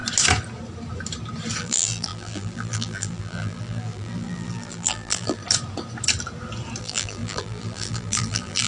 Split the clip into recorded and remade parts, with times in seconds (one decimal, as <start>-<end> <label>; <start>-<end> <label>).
0.0-1.6 recorded; 1.6-5.4 remade; 5.4-6.8 recorded; 6.8-8.7 remade